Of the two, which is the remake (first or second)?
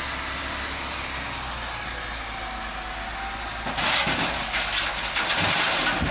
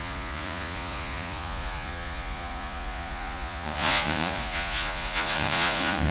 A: second